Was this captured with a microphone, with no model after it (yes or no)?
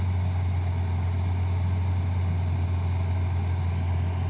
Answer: yes